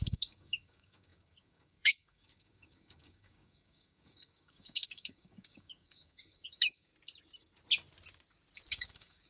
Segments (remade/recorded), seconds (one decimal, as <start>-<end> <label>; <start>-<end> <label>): 0.0-6.9 remade; 6.9-8.7 recorded; 8.7-9.3 remade